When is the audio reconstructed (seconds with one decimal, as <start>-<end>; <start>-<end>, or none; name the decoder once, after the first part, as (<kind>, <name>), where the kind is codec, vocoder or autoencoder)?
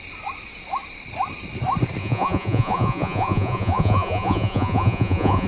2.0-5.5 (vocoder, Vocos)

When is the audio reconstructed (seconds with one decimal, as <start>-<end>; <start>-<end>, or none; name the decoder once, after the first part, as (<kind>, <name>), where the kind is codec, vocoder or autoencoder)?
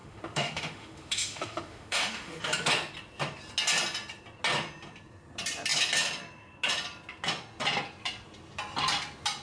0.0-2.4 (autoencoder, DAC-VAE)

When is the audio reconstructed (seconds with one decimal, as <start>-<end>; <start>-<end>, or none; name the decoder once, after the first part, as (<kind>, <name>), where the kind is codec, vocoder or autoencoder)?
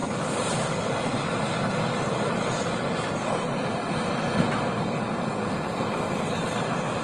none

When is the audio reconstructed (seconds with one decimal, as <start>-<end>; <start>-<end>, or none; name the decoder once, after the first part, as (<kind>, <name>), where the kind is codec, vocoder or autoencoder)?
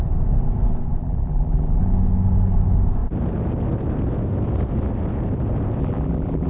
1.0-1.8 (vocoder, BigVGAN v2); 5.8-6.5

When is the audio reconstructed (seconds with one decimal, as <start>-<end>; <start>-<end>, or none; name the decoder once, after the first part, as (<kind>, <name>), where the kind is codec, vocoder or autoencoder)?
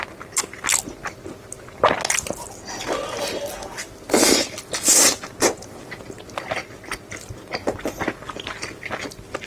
none